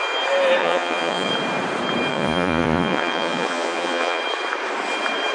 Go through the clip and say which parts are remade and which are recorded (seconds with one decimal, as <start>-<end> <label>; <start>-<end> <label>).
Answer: 0.0-0.6 recorded; 0.6-1.3 remade; 1.3-2.1 recorded; 2.1-4.2 remade; 4.2-5.3 recorded

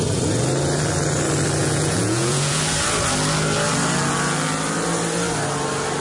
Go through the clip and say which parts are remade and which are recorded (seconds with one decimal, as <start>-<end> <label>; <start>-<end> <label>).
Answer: 0.0-1.6 recorded; 1.6-2.6 remade; 2.6-6.0 recorded

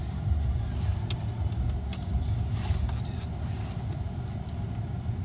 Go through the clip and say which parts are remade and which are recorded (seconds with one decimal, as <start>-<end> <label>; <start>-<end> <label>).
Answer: 0.0-5.2 recorded

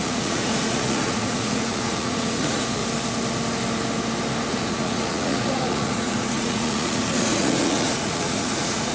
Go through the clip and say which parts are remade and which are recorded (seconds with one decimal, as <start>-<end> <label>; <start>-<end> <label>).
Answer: 0.0-2.8 remade; 2.8-4.5 recorded; 4.5-8.9 remade

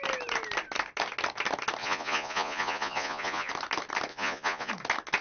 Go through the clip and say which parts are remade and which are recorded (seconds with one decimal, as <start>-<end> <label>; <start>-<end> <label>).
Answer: 0.0-1.8 recorded; 1.8-3.5 remade; 3.5-4.1 recorded; 4.1-4.7 remade; 4.7-5.2 recorded